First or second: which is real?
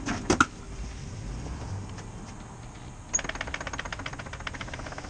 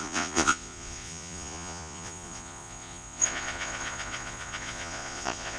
first